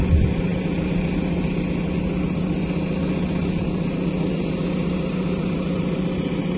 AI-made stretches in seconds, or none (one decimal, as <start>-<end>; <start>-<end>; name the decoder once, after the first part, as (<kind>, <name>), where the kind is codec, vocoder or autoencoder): none